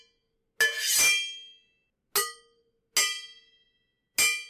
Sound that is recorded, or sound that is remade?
recorded